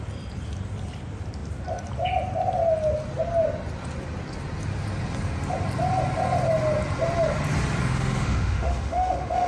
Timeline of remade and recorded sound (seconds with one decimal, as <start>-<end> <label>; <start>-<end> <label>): 0.0-7.8 recorded; 7.8-9.5 remade